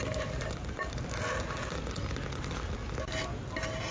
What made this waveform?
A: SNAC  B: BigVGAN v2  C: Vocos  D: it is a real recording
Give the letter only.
D